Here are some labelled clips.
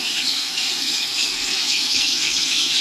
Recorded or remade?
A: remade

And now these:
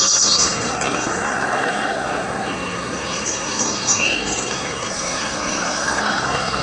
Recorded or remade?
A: remade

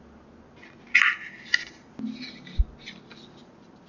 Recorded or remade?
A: recorded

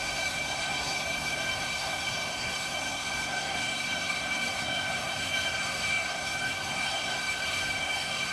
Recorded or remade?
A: remade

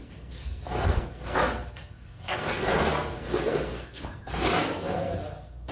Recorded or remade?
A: remade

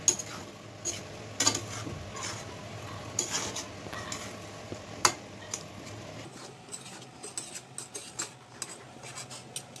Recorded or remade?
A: recorded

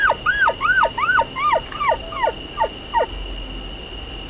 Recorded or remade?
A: recorded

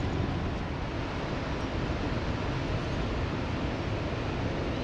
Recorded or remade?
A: recorded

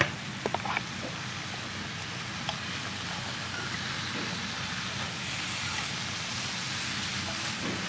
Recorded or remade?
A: recorded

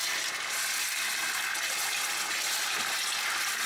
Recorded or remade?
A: recorded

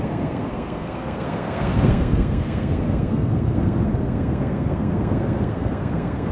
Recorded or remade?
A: remade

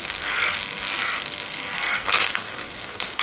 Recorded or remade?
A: remade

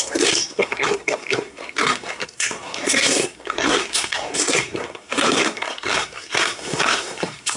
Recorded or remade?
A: remade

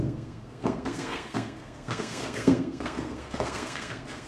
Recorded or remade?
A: remade